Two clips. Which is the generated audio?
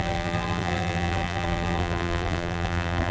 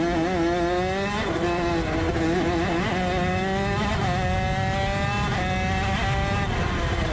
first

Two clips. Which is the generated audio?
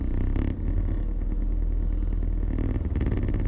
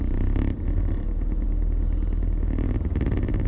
second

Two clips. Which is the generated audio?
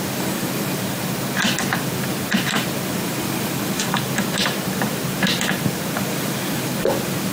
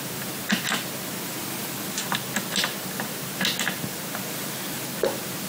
first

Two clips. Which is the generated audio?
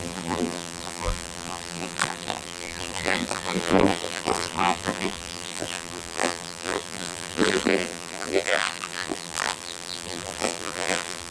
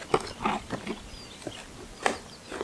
first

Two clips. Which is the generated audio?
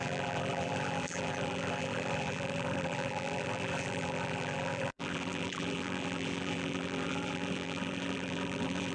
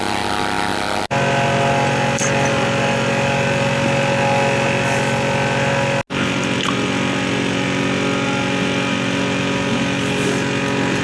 first